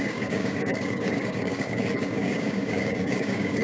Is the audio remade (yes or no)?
yes